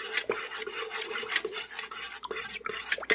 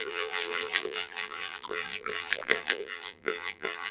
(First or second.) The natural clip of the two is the first